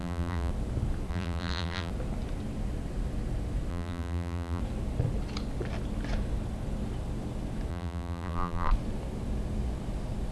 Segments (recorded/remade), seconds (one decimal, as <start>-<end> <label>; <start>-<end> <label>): 0.0-0.5 remade; 0.5-1.1 recorded; 1.1-1.9 remade; 1.9-3.7 recorded; 3.7-4.6 remade; 4.6-7.7 recorded; 7.7-8.7 remade; 8.7-10.3 recorded